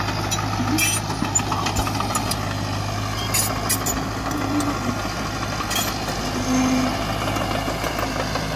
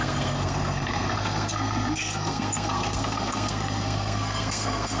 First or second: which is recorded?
first